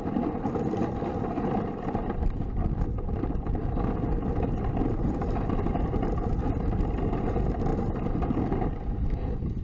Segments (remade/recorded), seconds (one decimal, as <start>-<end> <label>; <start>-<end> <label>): 0.0-9.6 recorded